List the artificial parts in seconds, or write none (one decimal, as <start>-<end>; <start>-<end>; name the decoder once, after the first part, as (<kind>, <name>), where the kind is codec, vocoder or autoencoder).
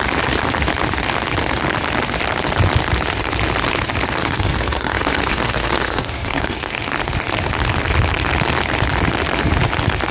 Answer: 4.2-6.7 (codec, SNAC)